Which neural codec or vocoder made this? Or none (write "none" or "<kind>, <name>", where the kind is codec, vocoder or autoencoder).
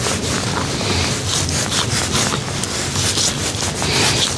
none